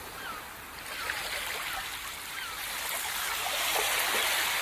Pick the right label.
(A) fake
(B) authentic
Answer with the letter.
B